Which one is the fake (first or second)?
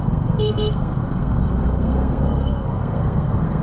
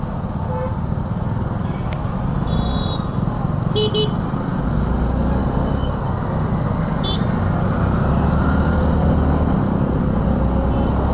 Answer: first